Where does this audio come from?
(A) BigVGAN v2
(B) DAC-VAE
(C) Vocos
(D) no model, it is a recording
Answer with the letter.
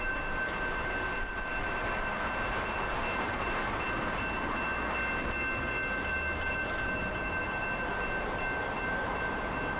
D